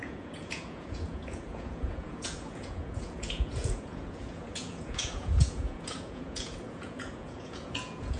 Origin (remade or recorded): remade